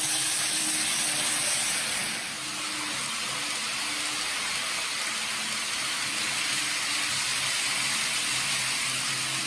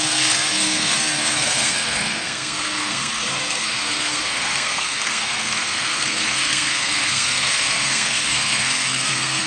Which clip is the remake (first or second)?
second